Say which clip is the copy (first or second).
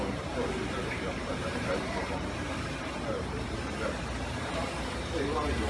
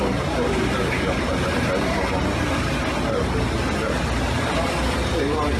first